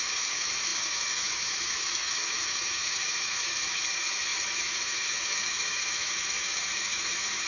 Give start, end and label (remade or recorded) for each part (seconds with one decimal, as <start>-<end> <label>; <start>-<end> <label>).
0.0-7.5 remade